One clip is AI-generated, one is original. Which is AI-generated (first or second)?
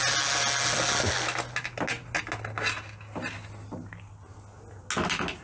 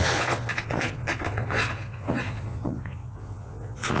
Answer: second